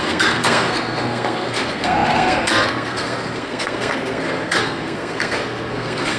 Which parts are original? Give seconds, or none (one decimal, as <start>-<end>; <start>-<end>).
none